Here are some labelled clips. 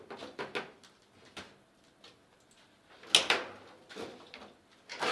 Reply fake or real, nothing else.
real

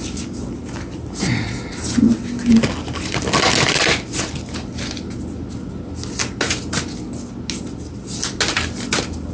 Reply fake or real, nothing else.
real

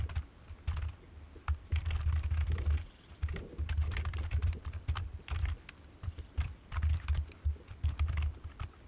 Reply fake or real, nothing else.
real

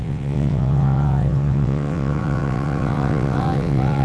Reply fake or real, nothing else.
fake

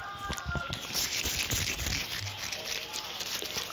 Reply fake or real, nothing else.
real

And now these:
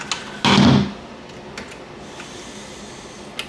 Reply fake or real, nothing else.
real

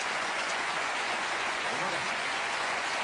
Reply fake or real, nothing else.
fake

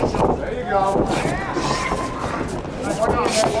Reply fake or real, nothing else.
real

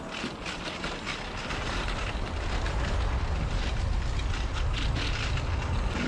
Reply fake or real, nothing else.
real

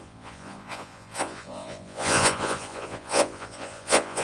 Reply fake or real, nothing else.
fake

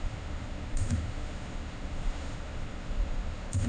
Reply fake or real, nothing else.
fake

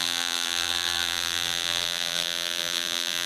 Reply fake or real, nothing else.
fake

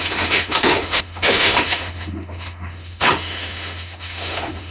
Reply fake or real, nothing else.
fake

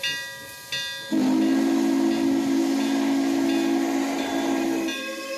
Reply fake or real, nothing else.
real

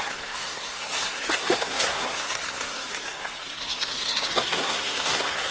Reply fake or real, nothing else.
fake